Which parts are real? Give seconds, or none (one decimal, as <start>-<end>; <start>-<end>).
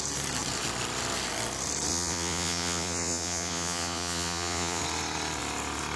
0.0-1.9; 4.8-6.0